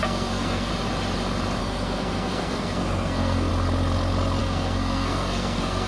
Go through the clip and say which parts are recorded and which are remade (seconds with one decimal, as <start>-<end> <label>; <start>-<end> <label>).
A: 0.0-0.7 remade; 0.7-1.6 recorded; 1.6-3.5 remade; 3.5-4.4 recorded; 4.4-5.9 remade